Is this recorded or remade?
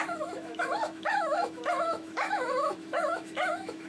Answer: remade